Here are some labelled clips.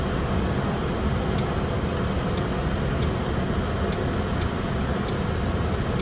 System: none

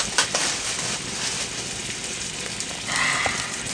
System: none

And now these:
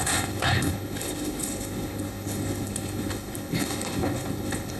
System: codec, HILCodec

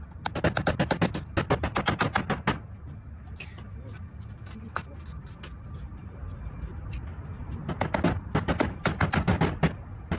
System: none